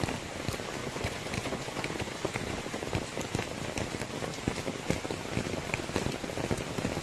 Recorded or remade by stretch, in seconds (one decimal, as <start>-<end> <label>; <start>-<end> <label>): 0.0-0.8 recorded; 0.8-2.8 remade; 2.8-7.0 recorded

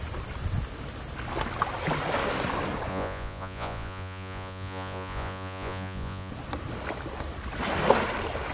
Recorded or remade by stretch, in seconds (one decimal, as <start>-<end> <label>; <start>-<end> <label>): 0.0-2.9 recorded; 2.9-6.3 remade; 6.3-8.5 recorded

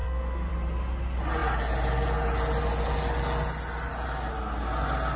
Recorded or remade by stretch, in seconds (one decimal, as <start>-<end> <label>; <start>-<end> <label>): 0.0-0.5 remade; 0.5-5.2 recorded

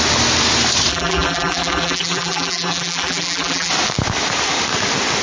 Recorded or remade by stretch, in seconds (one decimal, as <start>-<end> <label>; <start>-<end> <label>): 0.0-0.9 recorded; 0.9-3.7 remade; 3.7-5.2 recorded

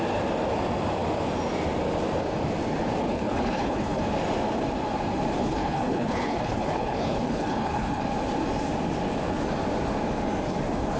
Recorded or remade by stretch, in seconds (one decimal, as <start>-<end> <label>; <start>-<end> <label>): 0.0-3.0 recorded; 3.0-4.0 remade; 4.0-5.4 recorded; 5.4-8.0 remade; 8.0-11.0 recorded

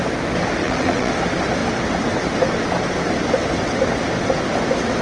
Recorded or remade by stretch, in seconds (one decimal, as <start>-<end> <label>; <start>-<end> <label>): 0.0-0.6 recorded; 0.6-1.1 remade; 1.1-5.0 recorded

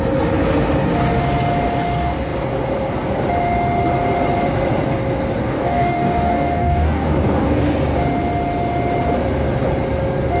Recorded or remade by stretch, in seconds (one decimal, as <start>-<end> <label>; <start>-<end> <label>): 0.0-5.4 recorded; 5.4-7.6 remade; 7.6-10.4 recorded